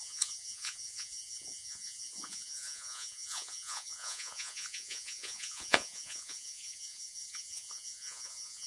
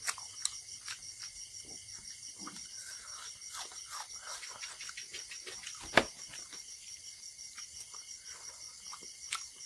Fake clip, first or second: first